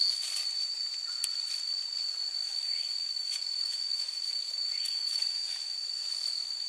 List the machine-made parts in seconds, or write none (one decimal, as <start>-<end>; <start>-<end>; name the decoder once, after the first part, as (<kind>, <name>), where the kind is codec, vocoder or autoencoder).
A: 2.4-6.7 (autoencoder, DAC-VAE)